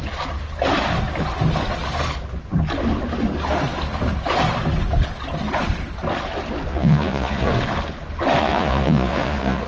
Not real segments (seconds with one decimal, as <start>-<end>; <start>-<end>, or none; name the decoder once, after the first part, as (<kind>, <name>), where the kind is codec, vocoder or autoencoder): 6.7-7.5 (vocoder, Vocos); 8.4-9.7